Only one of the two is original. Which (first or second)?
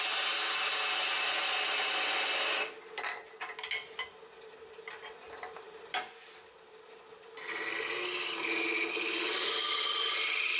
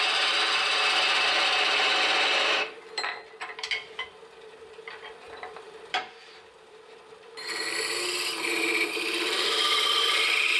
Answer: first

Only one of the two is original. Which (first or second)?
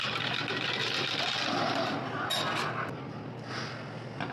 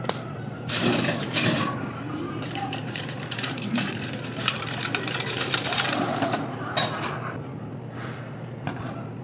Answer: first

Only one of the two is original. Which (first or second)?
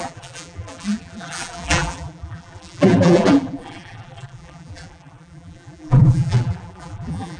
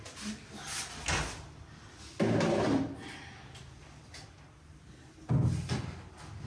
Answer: second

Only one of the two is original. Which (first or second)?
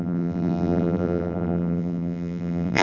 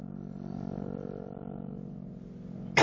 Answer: second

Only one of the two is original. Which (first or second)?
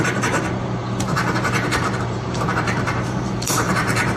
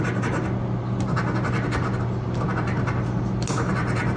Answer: second